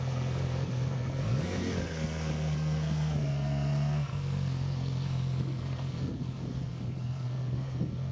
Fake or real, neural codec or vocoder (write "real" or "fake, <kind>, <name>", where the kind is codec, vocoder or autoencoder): fake, codec, SNAC